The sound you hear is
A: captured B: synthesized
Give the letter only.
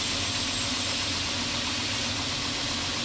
A